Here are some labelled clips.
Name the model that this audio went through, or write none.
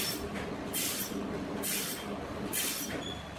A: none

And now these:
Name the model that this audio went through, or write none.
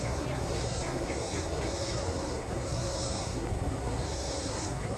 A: codec, SNAC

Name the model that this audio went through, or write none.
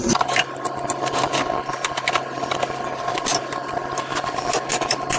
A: none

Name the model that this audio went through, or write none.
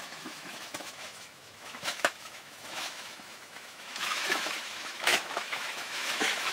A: autoencoder, DAC-VAE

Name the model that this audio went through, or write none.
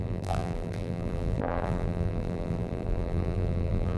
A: vocoder, BigVGAN v2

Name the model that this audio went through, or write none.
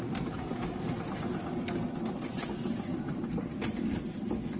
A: none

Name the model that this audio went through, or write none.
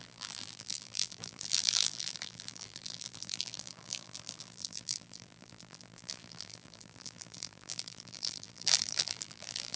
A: vocoder, BigVGAN v2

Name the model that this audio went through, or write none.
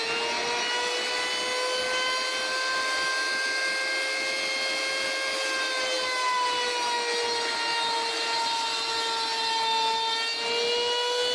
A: none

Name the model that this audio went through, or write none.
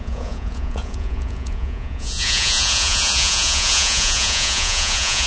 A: vocoder, Vocos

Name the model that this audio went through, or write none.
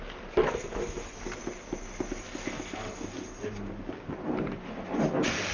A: none